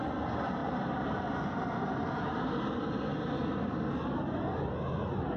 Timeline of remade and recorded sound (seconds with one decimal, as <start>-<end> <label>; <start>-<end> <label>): 0.0-0.6 recorded; 0.6-2.6 remade; 2.6-5.4 recorded